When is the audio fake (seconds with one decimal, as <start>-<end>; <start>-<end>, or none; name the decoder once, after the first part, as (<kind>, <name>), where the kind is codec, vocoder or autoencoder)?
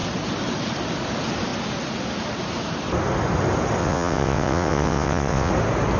3.8-5.5 (vocoder, WaveNeXt)